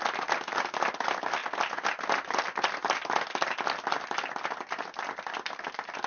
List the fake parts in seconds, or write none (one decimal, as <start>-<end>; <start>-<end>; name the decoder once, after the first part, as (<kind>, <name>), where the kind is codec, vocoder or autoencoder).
none